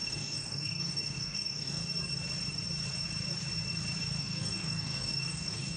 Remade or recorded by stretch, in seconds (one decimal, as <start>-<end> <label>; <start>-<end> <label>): 0.0-1.8 remade; 1.8-4.2 recorded; 4.2-5.8 remade